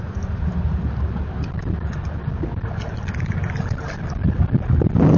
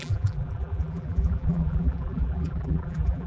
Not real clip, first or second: second